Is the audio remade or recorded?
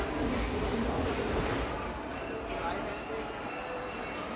recorded